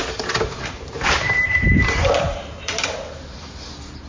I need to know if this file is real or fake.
fake